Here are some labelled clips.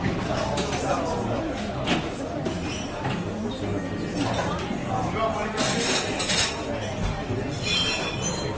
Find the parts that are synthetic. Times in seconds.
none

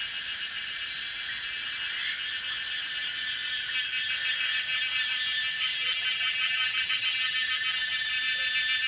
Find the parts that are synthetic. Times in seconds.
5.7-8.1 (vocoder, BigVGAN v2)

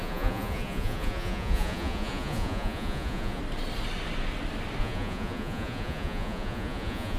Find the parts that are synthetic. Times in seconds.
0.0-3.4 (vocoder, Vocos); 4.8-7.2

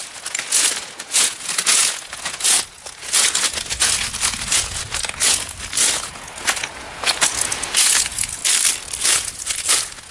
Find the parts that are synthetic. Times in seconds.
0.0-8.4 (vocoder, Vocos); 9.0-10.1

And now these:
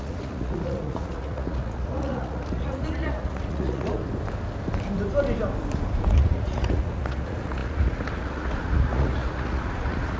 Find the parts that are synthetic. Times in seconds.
0.0-4.0 (vocoder, Vocos); 6.1-10.2

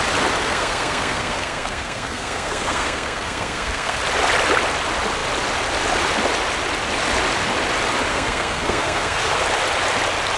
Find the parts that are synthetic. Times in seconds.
0.4-4.0 (codec, SNAC); 8.1-9.4

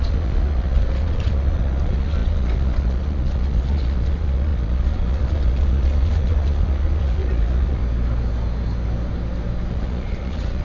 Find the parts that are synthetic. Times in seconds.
0.0-7.8 (vocoder, Vocos); 9.7-10.6

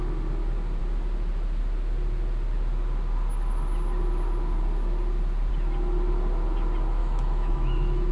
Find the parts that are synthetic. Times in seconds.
7.0-8.1 (autoencoder, DAC-VAE)